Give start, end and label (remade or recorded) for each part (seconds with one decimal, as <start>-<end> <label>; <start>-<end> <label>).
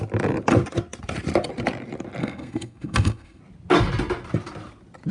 0.0-2.2 recorded; 2.2-3.4 remade; 3.4-5.1 recorded